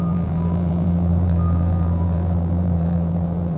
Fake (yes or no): yes